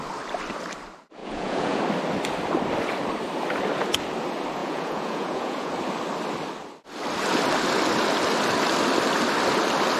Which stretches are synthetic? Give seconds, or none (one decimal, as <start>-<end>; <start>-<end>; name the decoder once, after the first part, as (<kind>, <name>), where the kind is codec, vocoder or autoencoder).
1.2-1.8 (vocoder, Vocos); 4.6-5.7